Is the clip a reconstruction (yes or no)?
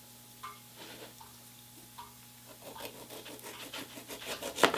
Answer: no